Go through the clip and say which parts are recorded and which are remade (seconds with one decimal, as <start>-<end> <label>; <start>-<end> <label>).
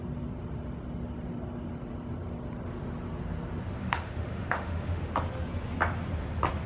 0.0-3.8 recorded; 3.8-5.0 remade; 5.0-6.7 recorded